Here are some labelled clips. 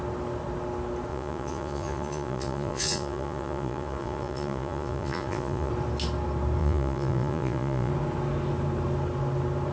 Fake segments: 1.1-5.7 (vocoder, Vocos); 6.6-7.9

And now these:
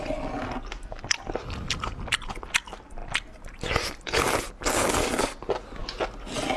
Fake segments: none